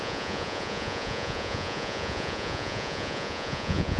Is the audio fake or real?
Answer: fake